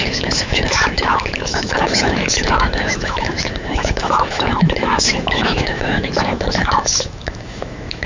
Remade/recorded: remade